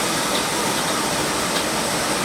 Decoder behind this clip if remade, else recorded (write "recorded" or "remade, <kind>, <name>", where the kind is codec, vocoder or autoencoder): remade, vocoder, BigVGAN v2